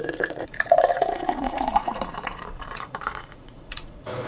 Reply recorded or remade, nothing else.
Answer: remade